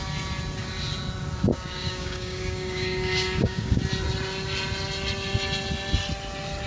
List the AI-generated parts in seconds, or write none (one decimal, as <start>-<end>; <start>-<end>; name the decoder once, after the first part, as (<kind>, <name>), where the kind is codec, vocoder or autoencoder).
1.5-3.8 (codec, DAC)